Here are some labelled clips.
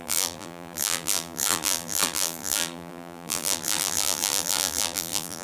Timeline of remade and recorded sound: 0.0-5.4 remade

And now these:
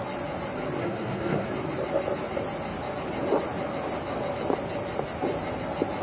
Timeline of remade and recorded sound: 0.0-0.8 recorded; 0.8-1.5 remade; 1.5-6.0 recorded

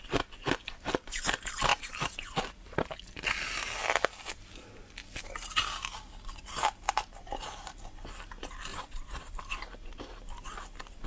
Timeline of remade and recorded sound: 0.0-8.7 recorded; 8.7-9.3 remade; 9.3-11.1 recorded

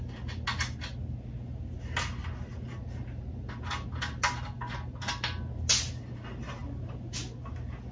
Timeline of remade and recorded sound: 0.0-7.9 recorded